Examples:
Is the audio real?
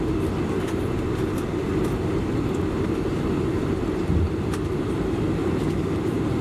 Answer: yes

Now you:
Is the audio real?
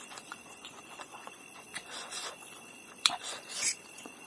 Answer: no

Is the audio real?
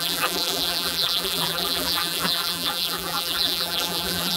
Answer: no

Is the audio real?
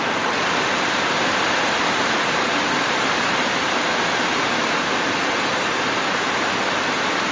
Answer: yes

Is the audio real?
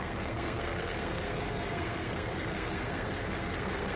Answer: no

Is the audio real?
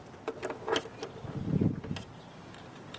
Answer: yes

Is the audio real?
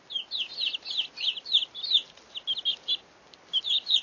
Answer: yes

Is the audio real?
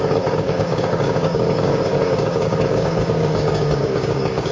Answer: no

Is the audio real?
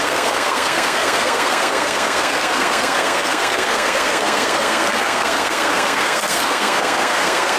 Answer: no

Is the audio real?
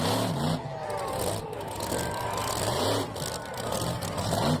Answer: yes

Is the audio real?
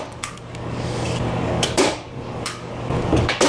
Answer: no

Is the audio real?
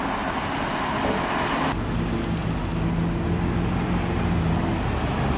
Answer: yes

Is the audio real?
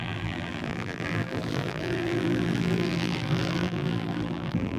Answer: no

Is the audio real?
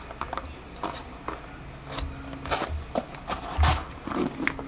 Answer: yes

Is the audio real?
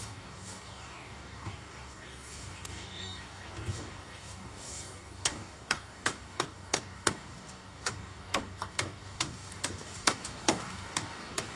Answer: no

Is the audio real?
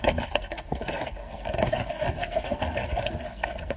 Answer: no